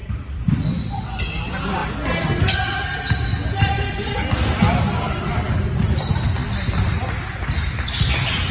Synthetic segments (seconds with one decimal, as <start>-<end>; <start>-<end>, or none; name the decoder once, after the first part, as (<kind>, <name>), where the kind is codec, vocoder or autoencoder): none